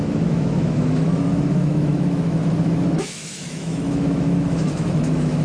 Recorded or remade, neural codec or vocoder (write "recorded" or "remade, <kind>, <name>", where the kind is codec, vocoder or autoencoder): remade, autoencoder, DAC-VAE